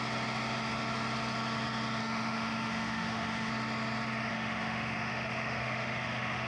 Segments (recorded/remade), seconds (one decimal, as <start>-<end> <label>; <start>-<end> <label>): 0.0-2.0 recorded; 2.0-3.5 remade; 3.5-4.3 recorded; 4.3-6.5 remade